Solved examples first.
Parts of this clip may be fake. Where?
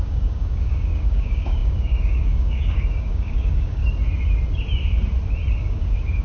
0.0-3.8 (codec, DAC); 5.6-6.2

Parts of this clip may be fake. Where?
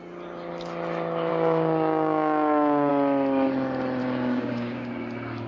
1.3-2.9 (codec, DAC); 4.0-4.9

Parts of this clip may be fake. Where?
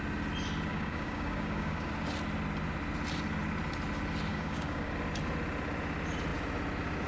0.7-1.9 (codec, DAC); 4.3-4.9